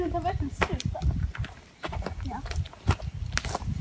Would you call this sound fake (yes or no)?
yes